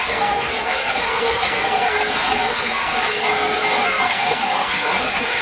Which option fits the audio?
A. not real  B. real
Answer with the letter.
A